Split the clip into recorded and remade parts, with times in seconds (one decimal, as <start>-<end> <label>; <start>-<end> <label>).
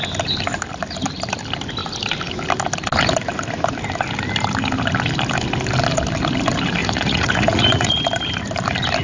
0.0-6.8 recorded; 6.8-8.0 remade; 8.0-9.0 recorded